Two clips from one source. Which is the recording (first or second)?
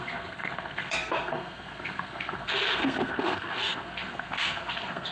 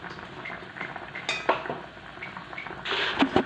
second